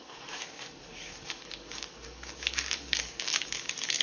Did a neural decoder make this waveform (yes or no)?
yes